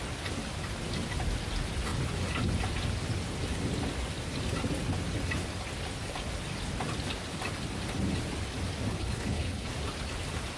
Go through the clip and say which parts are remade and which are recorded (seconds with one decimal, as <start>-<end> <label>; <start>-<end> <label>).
0.0-8.9 recorded; 8.9-9.7 remade; 9.7-10.6 recorded